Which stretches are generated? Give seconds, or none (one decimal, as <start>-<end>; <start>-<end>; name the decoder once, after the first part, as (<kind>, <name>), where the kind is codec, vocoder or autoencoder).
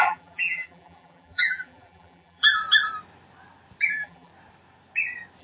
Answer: 0.0-2.6 (vocoder, BigVGAN v2); 3.9-4.3